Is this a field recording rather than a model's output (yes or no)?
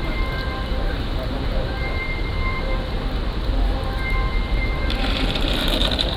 no